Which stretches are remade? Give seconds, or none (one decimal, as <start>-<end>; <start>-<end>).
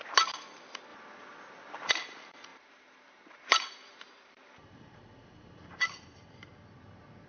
2.5-5.7